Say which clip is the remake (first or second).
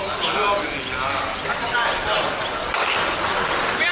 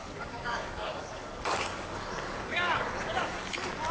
second